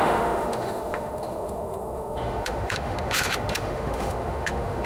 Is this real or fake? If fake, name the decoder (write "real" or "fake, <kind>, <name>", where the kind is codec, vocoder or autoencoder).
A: fake, autoencoder, DAC-VAE